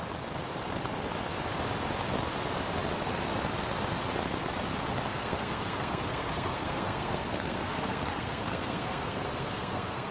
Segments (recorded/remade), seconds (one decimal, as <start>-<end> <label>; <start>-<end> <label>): 0.0-5.1 recorded; 5.1-10.1 remade